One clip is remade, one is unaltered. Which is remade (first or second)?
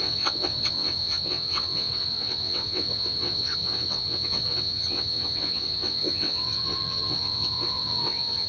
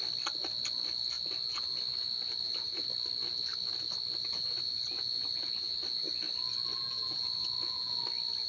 first